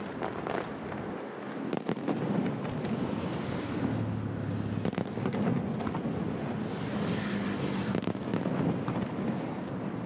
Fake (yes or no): no